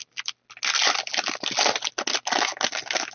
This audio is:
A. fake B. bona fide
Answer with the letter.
B